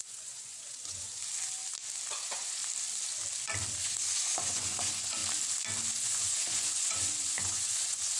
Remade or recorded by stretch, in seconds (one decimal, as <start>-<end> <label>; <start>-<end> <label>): 0.0-1.1 remade; 1.1-2.1 recorded; 2.1-2.6 remade; 2.6-3.8 recorded; 3.8-5.2 remade; 5.2-5.9 recorded; 5.9-8.2 remade